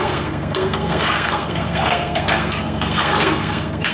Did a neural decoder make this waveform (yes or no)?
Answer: yes